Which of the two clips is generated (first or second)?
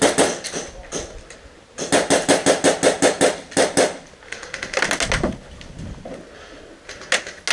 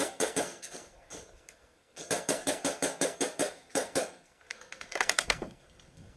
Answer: second